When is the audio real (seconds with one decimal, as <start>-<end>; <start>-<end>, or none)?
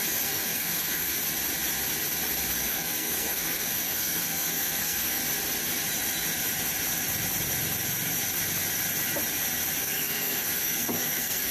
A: 1.2-2.6; 5.2-9.8